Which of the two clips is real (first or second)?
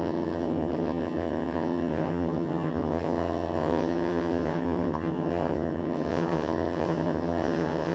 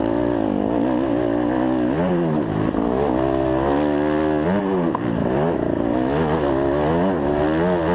second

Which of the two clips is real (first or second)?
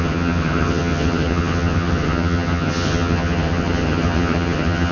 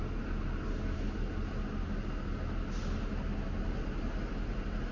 second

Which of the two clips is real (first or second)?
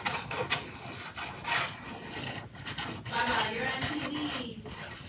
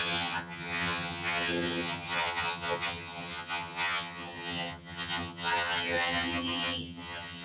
first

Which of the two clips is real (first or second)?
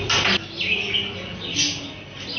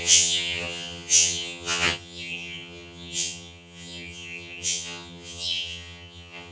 first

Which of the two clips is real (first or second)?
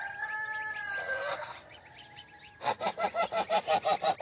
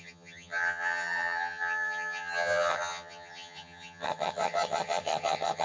first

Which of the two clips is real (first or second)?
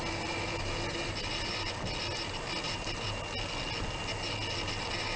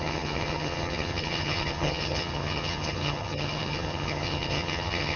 first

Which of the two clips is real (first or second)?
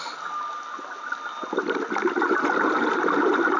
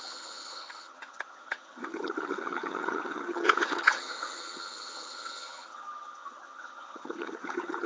first